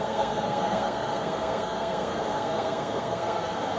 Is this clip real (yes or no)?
no